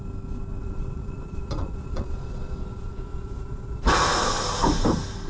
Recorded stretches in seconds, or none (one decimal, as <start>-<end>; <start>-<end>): 0.0-0.6; 3.8-5.3

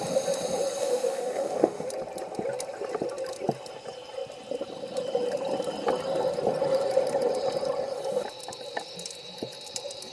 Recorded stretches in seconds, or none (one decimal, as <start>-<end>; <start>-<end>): 0.0-0.8; 1.9-10.1

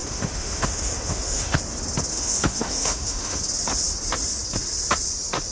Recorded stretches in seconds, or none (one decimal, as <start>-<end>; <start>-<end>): 1.6-2.1; 3.4-5.5

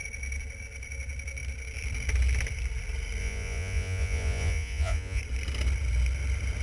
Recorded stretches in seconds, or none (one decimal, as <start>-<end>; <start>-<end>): 0.0-3.2; 5.2-6.6